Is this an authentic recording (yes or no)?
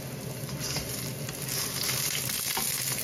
yes